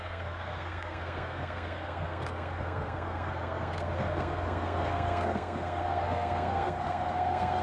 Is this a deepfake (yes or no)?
yes